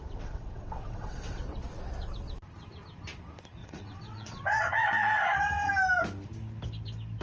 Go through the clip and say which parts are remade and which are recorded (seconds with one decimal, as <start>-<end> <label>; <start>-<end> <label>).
0.0-1.4 remade; 1.4-3.6 recorded; 3.6-5.7 remade; 5.7-7.2 recorded